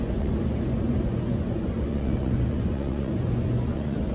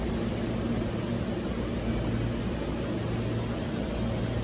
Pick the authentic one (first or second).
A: second